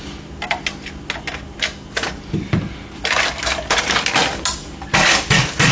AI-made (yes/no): no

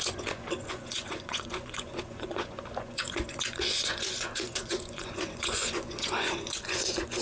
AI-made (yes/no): yes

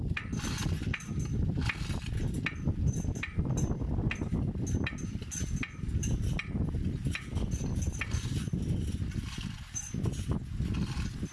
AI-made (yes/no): no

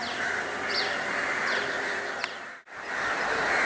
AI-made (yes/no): no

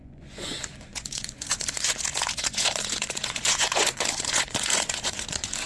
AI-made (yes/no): yes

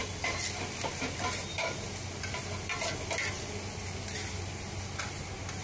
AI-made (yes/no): no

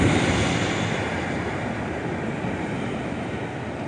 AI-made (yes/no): no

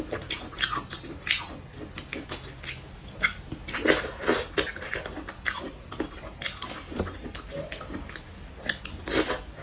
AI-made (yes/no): no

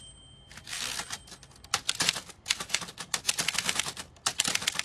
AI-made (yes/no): no